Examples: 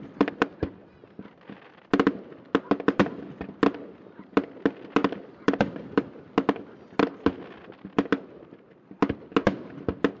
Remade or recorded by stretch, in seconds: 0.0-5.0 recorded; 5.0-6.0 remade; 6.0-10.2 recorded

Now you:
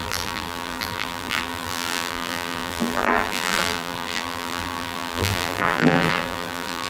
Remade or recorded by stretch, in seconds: 0.0-6.9 remade

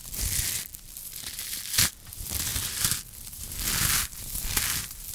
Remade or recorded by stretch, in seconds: 0.0-2.5 recorded; 2.5-4.6 remade; 4.6-5.1 recorded

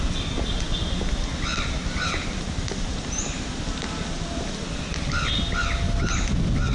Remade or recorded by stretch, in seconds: 0.0-1.5 recorded; 1.5-4.8 remade; 4.8-6.7 recorded

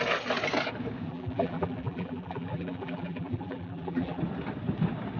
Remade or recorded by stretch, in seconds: 0.0-1.1 recorded; 1.1-4.2 remade; 4.2-5.2 recorded